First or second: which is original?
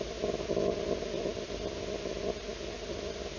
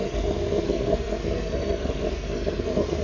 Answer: first